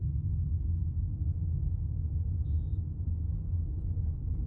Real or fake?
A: real